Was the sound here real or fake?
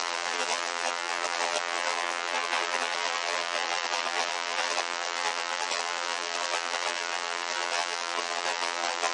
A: fake